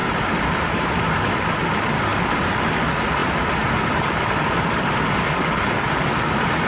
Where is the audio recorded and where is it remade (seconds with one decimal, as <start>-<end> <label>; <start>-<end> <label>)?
0.0-2.1 recorded; 2.1-2.7 remade; 2.7-3.2 recorded; 3.2-5.3 remade; 5.3-6.7 recorded

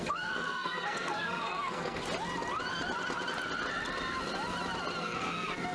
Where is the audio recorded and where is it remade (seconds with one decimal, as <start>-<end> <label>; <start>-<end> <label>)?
0.0-2.0 remade; 2.0-5.0 recorded; 5.0-5.7 remade

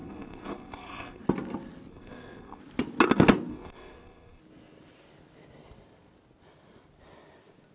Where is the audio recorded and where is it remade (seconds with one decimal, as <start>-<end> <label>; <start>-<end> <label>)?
0.0-1.2 remade; 1.2-1.9 recorded; 1.9-2.6 remade; 2.6-3.5 recorded; 3.5-4.4 remade; 4.4-7.7 recorded

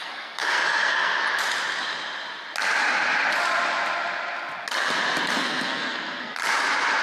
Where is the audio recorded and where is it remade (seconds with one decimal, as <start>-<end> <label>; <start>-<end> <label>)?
0.0-1.2 remade; 1.2-5.4 recorded; 5.4-6.4 remade; 6.4-7.0 recorded

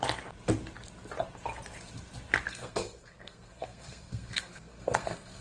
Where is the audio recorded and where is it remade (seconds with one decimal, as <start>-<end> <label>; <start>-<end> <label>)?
0.0-2.5 recorded; 2.5-5.4 remade